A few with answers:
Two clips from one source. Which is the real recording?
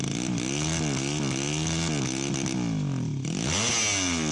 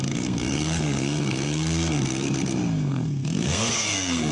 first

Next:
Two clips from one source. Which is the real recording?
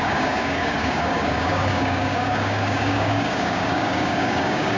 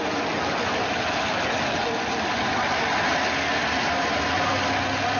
second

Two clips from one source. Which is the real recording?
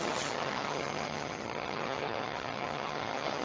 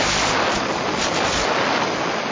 second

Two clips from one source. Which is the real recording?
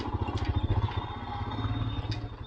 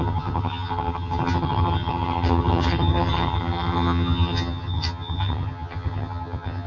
first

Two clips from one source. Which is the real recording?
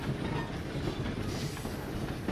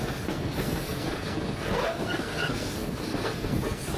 first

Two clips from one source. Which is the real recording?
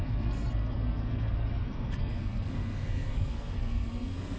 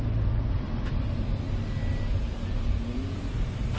second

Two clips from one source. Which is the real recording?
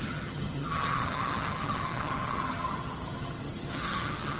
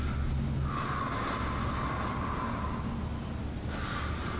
second